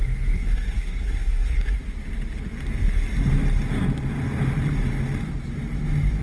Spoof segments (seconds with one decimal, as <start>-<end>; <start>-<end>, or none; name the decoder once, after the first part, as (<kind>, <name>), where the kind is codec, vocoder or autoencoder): 0.0-1.8 (codec, SNAC)